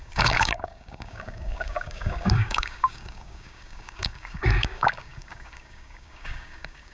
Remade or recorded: remade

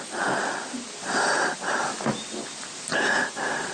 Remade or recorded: recorded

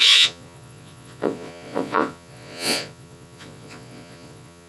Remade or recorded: remade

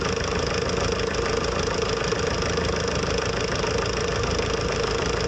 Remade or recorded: recorded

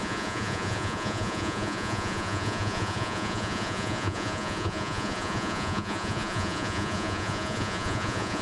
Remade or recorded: remade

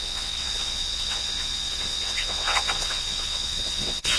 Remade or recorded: remade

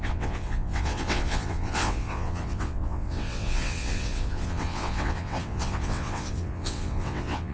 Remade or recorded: remade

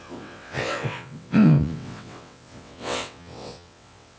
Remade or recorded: remade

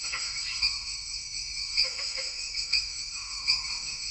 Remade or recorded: remade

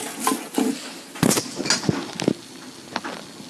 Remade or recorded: recorded